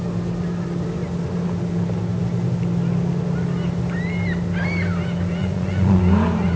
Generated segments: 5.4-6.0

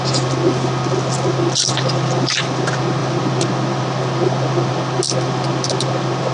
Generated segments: none

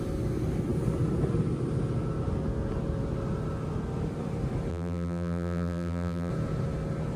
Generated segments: 4.7-6.3

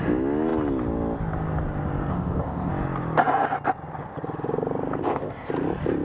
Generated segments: 2.1-2.7; 5.0-5.5

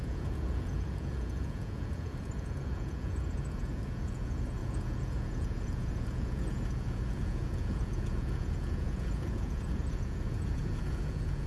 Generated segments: 0.0-11.5